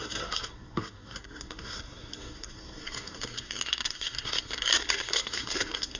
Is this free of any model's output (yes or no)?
no